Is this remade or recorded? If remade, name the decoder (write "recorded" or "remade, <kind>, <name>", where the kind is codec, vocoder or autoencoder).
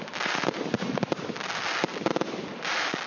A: recorded